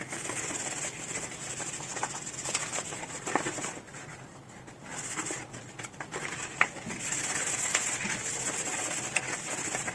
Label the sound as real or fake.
real